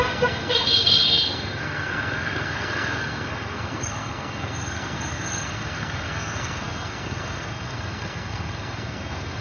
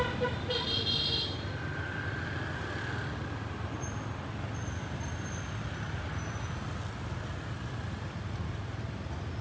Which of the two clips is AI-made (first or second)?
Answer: first